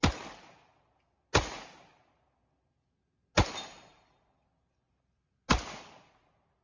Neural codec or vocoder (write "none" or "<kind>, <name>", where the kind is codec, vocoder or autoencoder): none